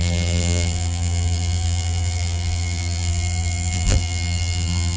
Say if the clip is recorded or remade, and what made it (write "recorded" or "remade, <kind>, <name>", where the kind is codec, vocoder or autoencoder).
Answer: remade, vocoder, BigVGAN v2